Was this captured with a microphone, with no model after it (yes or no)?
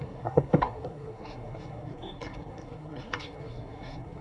no